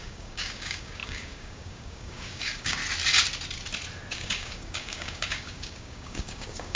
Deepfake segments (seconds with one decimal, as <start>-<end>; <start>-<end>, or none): 0.0-2.8; 4.1-6.8